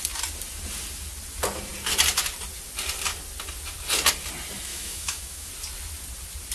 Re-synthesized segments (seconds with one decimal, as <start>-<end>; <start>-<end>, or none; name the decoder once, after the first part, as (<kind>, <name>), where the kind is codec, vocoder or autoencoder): 4.7-5.5 (autoencoder, DAC-VAE)